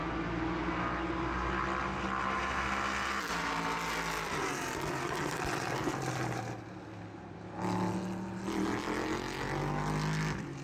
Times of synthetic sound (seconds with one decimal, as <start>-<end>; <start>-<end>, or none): none